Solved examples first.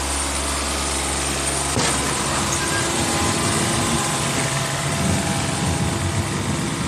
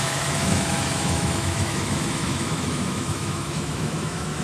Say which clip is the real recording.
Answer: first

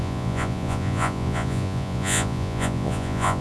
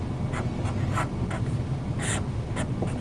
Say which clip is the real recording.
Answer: second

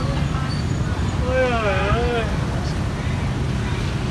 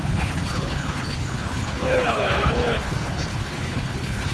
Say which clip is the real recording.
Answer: first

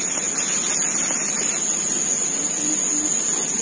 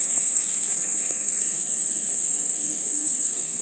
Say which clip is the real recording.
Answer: first